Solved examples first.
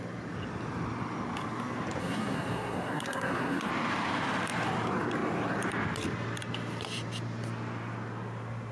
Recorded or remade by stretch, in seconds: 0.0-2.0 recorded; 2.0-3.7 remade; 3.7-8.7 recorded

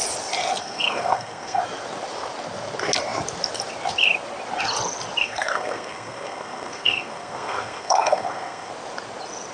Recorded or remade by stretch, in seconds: 0.0-0.6 recorded; 0.6-1.6 remade; 1.6-5.2 recorded; 5.2-8.7 remade; 8.7-9.5 recorded

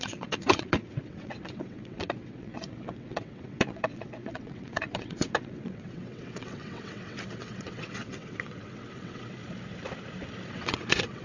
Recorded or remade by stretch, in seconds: 0.0-9.4 remade; 9.4-10.5 recorded; 10.5-11.2 remade

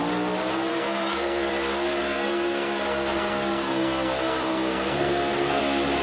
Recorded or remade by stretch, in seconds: 0.0-0.7 recorded; 0.7-1.5 remade; 1.5-2.0 recorded; 2.0-5.6 remade; 5.6-6.0 recorded

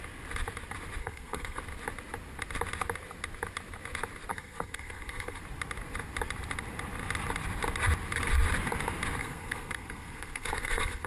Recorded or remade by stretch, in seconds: 0.0-1.0 recorded; 1.0-1.6 remade; 1.6-4.3 recorded; 4.3-5.4 remade; 5.4-9.2 recorded; 9.2-11.1 remade